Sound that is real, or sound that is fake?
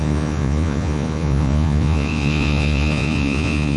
fake